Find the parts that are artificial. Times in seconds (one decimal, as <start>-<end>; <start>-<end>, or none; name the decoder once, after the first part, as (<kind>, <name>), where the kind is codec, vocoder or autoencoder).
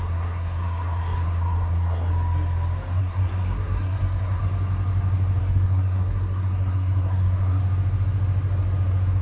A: 0.0-2.1 (codec, SNAC); 3.0-4.4; 5.4-7.6